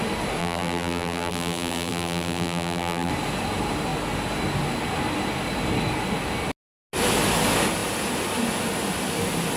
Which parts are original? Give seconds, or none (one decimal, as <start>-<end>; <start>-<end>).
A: 0.0-0.4; 3.1-9.6